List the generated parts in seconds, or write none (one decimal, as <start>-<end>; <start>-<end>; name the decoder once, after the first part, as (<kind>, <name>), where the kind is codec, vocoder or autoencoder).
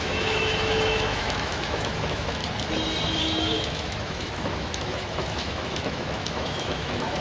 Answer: 0.0-2.4 (autoencoder, DAC-VAE); 3.2-7.2